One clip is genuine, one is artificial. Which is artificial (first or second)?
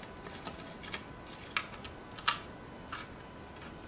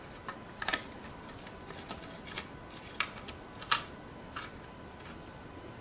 second